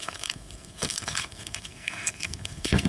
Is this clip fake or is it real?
fake